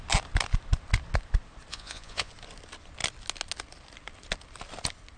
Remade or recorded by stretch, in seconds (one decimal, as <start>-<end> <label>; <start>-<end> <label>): 0.0-1.7 recorded; 1.7-2.3 remade; 2.3-5.2 recorded